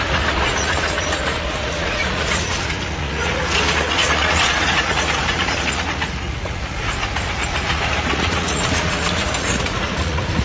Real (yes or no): no